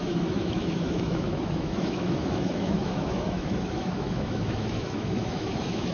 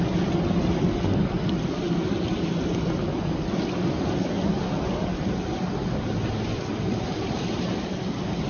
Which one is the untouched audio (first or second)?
second